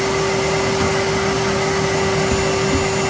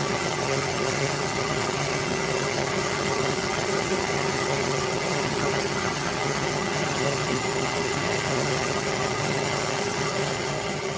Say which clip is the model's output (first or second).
second